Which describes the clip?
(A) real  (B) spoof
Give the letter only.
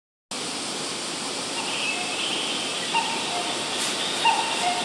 A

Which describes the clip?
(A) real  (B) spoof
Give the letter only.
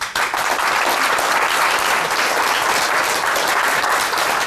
A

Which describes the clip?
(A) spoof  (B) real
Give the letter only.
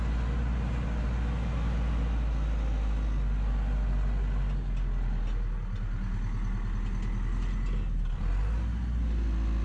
B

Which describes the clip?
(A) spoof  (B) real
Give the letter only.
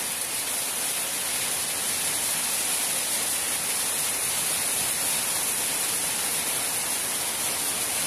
B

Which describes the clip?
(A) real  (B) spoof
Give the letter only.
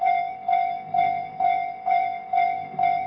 B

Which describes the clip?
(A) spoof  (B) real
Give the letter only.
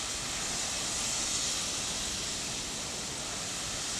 B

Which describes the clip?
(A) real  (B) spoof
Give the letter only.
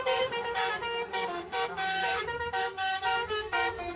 B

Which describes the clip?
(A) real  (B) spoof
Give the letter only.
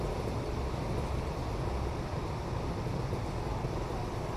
A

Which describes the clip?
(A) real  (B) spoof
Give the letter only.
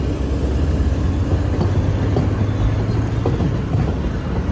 A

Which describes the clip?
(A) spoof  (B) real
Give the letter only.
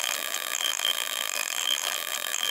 A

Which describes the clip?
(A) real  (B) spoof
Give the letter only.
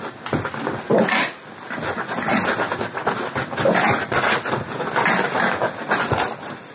A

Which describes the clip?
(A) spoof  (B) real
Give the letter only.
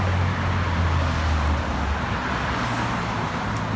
B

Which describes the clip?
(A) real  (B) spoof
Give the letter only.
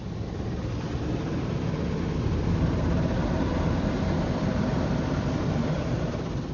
A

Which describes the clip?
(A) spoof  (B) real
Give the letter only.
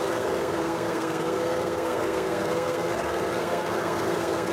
A